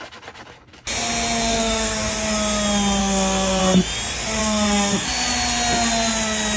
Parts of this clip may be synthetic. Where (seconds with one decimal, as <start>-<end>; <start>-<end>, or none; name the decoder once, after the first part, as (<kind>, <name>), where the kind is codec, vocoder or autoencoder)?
1.5-2.1 (codec, SNAC); 3.0-3.6; 4.4-5.1